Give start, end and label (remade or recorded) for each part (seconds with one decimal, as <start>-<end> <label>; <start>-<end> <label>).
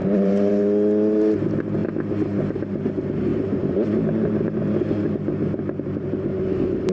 0.0-0.5 remade; 0.5-3.3 recorded; 3.3-5.1 remade; 5.1-6.9 recorded